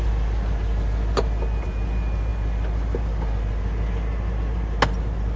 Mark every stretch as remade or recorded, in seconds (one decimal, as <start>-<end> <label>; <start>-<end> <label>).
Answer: 0.0-5.4 recorded